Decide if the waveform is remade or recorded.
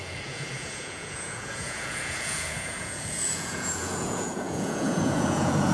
remade